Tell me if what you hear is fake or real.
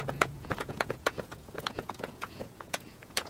fake